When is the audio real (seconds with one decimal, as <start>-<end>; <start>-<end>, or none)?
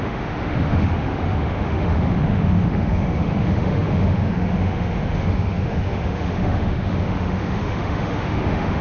none